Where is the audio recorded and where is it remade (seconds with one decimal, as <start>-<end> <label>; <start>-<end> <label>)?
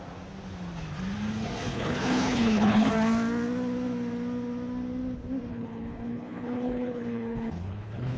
0.0-1.7 recorded; 1.7-2.9 remade; 2.9-5.5 recorded; 5.5-8.2 remade